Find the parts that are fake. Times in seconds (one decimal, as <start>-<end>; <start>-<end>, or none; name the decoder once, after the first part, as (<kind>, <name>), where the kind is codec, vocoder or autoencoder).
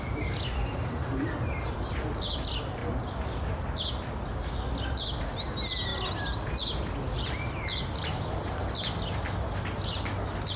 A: 0.8-1.9 (vocoder, BigVGAN v2)